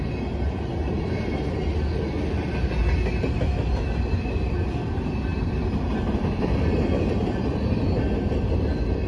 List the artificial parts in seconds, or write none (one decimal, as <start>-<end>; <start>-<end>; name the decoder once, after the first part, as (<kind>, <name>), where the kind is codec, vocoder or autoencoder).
none